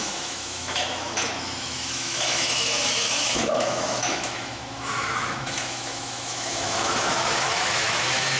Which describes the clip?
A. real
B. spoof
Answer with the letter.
B